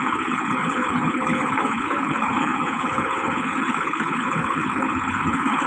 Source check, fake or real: fake